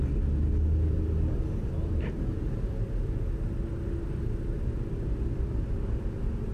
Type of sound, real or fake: real